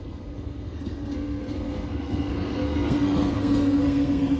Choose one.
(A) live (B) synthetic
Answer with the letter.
B